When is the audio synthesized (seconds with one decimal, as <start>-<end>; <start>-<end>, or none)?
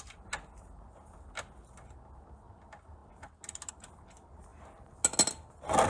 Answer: none